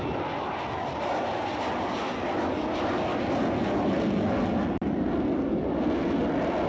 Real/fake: real